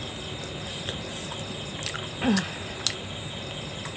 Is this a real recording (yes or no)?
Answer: yes